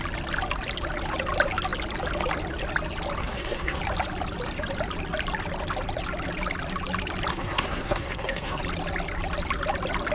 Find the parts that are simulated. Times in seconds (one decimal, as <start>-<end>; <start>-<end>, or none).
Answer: 3.2-3.8; 7.3-8.6